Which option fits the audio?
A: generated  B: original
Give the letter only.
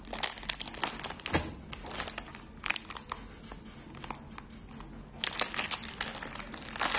B